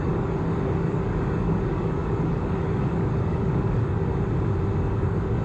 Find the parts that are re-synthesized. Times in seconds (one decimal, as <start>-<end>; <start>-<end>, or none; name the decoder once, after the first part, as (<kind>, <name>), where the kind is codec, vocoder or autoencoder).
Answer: 0.0-4.1 (codec, DAC); 4.9-5.4